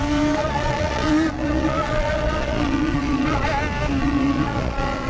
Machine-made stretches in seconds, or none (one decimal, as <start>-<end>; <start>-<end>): 0.4-3.5; 4.0-5.1